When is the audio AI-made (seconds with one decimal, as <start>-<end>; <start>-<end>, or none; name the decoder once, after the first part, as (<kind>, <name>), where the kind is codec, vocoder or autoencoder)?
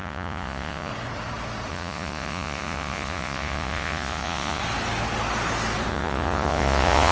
0.0-0.9 (vocoder, Vocos); 1.7-4.6; 5.9-7.1